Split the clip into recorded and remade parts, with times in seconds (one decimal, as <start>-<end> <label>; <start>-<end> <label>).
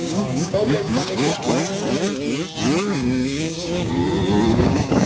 0.0-1.3 remade; 1.3-2.9 recorded; 2.9-4.0 remade; 4.0-4.5 recorded; 4.5-5.1 remade